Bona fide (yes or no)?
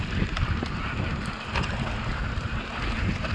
yes